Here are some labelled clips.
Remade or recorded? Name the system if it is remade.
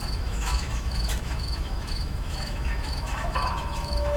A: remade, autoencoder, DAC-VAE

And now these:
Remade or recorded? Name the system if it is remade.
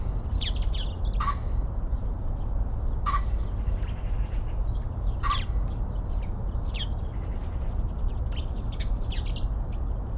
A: recorded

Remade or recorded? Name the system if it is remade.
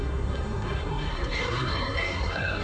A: remade, codec, SNAC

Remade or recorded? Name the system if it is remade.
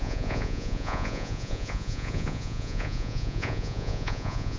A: remade, vocoder, Vocos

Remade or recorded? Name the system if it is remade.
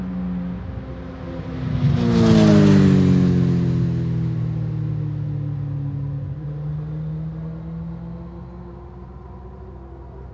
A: recorded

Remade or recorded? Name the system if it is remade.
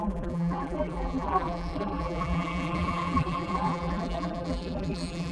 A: remade, vocoder, BigVGAN v2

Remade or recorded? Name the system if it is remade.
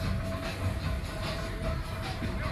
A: recorded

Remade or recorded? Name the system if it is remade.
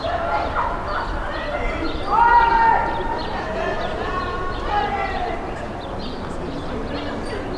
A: recorded